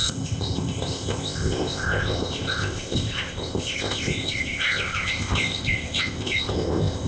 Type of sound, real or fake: fake